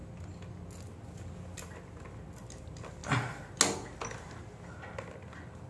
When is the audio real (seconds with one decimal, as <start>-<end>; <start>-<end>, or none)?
0.0-5.7